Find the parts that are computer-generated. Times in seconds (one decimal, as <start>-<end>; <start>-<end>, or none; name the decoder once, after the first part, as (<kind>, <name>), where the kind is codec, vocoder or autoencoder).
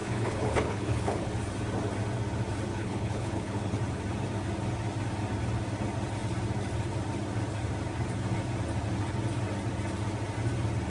0.0-1.3 (codec, HILCodec); 2.7-3.8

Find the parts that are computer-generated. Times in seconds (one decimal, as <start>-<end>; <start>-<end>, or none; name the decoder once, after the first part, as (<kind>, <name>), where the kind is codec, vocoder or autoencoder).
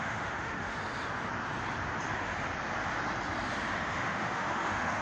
0.0-0.8 (autoencoder, DAC-VAE); 3.8-5.0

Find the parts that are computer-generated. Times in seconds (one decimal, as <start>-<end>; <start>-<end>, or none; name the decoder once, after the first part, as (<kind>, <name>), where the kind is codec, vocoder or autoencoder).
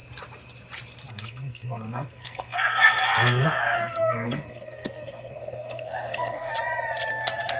1.1-6.5 (codec, SNAC); 7.1-7.6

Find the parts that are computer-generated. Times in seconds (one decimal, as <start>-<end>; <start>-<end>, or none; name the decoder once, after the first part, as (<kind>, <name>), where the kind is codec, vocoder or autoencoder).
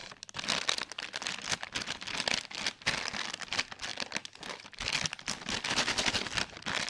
none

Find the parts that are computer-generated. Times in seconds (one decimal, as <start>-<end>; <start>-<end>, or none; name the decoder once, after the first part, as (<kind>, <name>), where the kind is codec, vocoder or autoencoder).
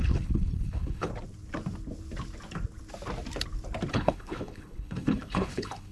0.0-1.1 (codec, HILCodec); 3.9-5.9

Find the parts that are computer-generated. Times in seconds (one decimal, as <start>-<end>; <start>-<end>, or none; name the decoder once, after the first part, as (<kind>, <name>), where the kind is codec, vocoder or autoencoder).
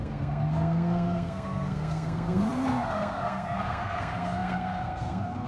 0.0-5.5 (codec, SNAC)